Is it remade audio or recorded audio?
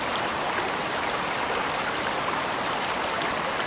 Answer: recorded